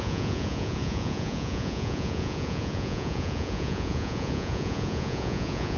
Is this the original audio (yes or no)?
no